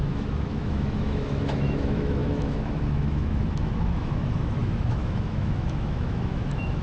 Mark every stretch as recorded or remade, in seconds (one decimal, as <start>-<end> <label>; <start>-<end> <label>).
0.0-6.8 remade